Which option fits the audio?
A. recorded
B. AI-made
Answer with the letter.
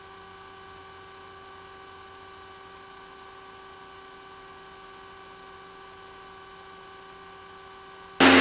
A